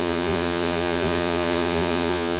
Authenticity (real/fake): fake